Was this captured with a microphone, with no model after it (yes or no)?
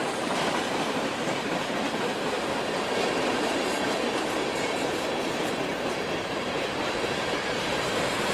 no